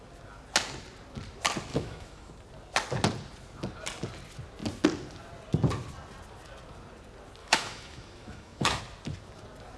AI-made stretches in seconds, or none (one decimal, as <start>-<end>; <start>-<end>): 1.7-2.3; 7.4-8.8

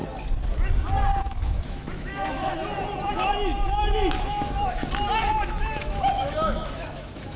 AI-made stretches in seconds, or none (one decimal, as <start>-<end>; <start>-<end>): 1.2-2.5; 3.1-4.8; 5.6-7.4

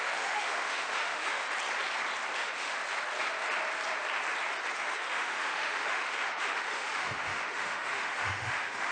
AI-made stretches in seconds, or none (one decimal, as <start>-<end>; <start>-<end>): 0.0-1.4; 2.4-2.8; 4.8-8.9

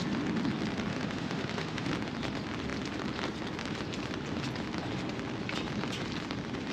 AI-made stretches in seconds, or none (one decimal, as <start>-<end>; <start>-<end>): 0.9-1.9